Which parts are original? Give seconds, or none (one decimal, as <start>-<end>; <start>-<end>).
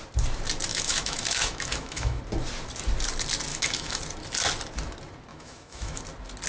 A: 0.0-0.7; 2.2-3.5; 4.0-5.3; 6.0-6.5